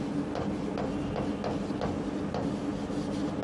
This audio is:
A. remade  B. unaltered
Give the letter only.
B